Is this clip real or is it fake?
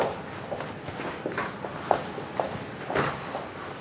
real